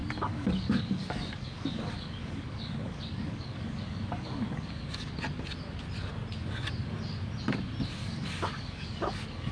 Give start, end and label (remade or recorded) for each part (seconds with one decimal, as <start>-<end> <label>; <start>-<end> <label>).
0.0-5.1 remade; 5.1-8.0 recorded; 8.0-9.5 remade